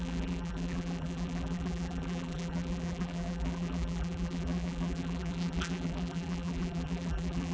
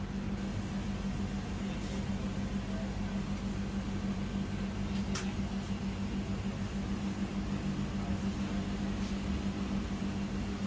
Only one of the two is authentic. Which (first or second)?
second